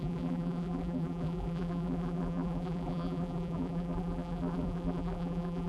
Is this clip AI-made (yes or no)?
yes